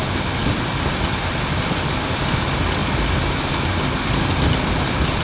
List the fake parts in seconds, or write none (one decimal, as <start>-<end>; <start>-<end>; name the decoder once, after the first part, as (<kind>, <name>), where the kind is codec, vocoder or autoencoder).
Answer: none